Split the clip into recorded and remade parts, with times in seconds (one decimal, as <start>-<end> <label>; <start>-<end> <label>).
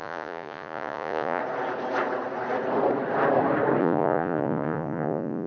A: 0.0-1.4 remade; 1.4-3.8 recorded; 3.8-5.5 remade